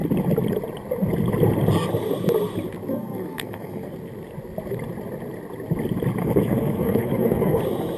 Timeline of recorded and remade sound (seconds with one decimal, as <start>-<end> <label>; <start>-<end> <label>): 0.0-2.9 recorded; 2.9-3.9 remade; 3.9-6.2 recorded; 6.2-7.6 remade; 7.6-8.0 recorded